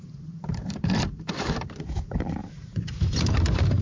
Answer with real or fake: fake